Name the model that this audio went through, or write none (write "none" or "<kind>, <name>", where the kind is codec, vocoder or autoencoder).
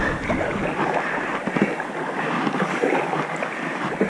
none